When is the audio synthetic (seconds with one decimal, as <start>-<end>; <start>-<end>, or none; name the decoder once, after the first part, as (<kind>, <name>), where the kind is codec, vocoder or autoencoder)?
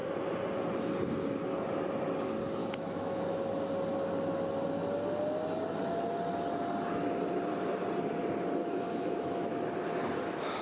2.6-3.2 (autoencoder, DAC-VAE); 8.6-9.5